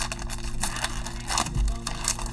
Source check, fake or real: real